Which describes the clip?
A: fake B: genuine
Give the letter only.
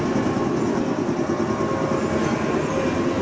B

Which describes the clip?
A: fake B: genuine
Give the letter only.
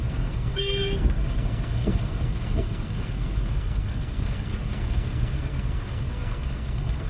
A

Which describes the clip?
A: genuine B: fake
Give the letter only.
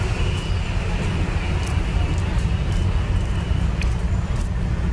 B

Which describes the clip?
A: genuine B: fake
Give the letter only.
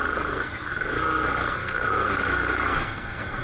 B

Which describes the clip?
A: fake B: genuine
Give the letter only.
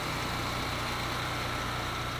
B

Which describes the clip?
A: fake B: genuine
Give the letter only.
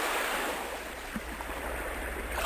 A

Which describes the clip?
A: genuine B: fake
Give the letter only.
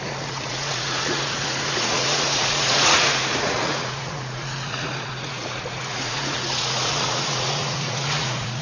B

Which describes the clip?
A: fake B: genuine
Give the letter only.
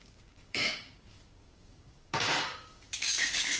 A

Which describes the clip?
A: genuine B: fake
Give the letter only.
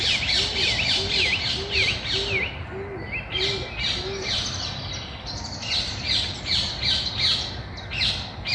A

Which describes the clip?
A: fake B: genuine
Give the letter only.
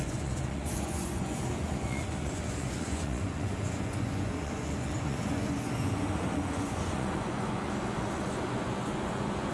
A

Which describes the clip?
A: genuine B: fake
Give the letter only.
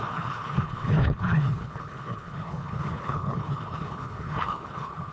B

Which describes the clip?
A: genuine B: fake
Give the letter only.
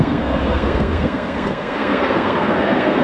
B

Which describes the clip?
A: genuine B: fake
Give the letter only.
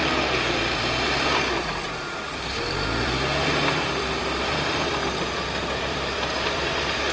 B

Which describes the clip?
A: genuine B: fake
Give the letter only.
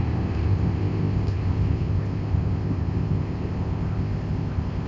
B